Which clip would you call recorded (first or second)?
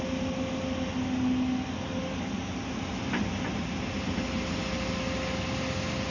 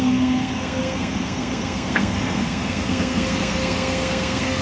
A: first